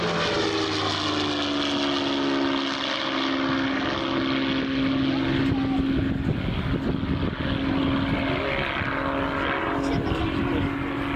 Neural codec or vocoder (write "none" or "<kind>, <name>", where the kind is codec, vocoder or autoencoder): none